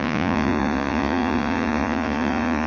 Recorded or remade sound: remade